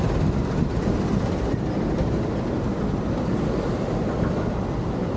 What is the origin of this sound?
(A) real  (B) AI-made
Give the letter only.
A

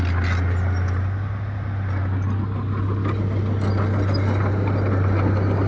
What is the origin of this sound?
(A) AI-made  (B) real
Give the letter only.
B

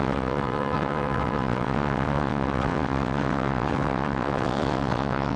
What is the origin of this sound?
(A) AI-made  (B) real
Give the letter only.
A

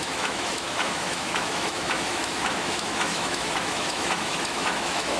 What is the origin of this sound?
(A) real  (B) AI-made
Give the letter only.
B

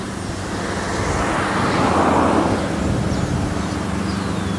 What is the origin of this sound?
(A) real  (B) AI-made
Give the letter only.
A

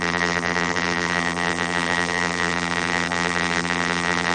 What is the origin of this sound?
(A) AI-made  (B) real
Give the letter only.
A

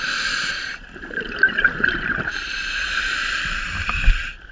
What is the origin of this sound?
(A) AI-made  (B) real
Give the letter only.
A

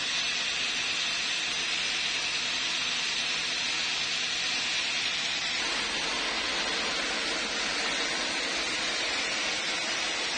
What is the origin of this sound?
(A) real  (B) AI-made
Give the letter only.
A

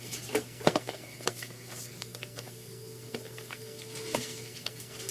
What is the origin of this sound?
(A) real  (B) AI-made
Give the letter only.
B